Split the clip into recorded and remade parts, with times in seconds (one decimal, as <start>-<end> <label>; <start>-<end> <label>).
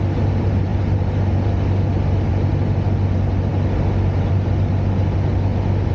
0.0-5.9 recorded